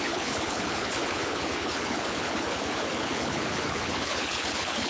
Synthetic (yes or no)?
yes